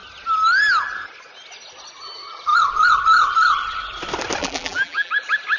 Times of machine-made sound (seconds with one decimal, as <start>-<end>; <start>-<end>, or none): 4.4-5.1